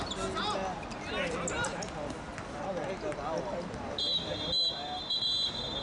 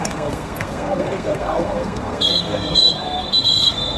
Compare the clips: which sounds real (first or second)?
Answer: first